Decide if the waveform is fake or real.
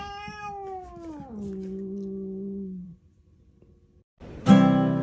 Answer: real